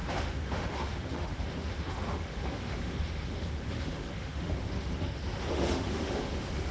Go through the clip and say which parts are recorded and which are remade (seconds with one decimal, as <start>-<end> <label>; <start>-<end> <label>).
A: 0.0-6.7 remade